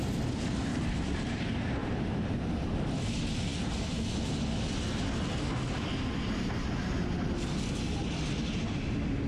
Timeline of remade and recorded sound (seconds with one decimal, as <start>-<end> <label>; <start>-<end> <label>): 0.0-0.7 recorded; 0.7-1.4 remade; 1.4-1.8 recorded; 1.8-2.5 remade; 2.5-9.3 recorded